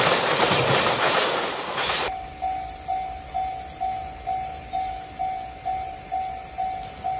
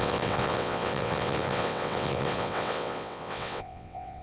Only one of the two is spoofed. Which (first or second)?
second